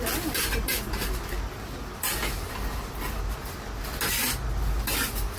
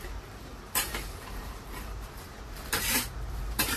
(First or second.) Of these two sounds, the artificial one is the second